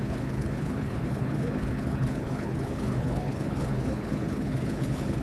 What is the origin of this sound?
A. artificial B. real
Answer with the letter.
A